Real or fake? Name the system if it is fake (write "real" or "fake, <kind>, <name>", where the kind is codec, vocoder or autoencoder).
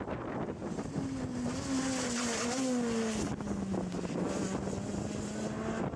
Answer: real